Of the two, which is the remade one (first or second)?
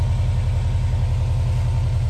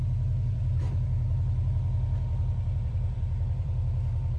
second